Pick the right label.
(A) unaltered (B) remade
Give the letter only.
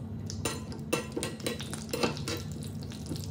A